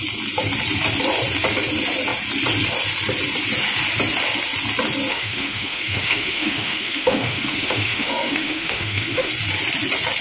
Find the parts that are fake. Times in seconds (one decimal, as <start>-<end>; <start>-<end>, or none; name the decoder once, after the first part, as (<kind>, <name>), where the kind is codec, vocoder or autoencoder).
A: 5.1-9.3 (autoencoder, DAC-VAE)

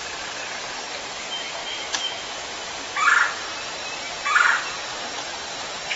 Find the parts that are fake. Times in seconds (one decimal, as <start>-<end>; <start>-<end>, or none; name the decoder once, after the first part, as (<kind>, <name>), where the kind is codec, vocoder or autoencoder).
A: 1.6-2.3 (autoencoder, DAC-VAE)

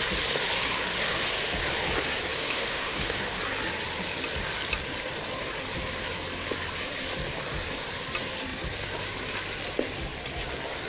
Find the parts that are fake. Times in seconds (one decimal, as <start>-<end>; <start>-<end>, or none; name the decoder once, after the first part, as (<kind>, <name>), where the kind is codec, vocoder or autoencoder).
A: 2.4-3.4 (autoencoder, DAC-VAE)